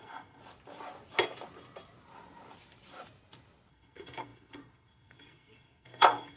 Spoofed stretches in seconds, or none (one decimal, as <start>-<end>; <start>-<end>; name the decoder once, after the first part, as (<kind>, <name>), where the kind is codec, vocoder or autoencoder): 0.0-0.4 (codec, SNAC); 3.7-6.4

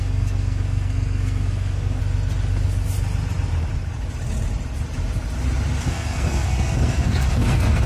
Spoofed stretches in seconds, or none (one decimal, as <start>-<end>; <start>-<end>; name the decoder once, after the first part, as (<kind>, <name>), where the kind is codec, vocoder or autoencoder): 0.0-2.0 (codec, SNAC); 5.8-7.9